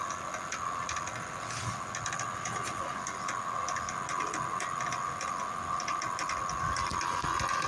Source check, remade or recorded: recorded